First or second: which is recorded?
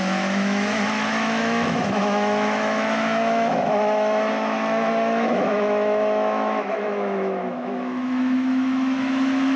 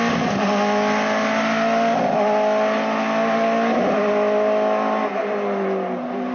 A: second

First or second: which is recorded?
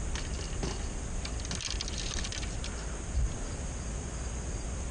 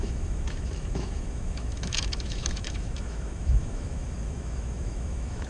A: first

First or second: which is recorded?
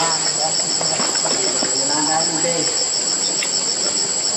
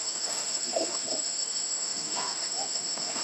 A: first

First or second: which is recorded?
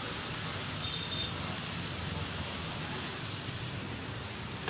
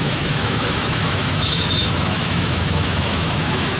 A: first